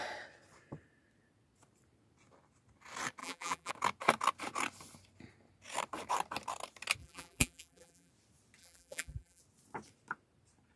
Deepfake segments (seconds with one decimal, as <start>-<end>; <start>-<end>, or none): 3.2-3.7; 7.0-8.1; 8.6-9.4